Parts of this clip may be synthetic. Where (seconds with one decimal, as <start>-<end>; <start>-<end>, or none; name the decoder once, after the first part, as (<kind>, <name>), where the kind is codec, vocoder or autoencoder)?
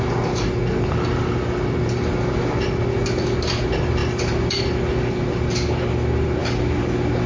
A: none